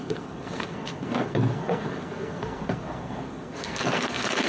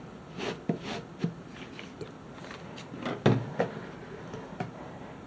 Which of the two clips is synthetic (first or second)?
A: first